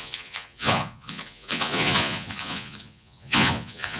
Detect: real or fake fake